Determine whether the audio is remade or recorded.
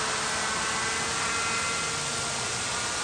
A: recorded